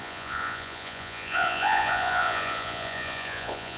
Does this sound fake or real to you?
fake